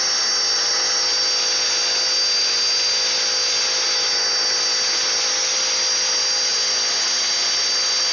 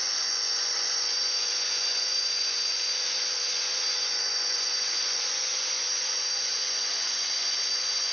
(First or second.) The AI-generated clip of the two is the second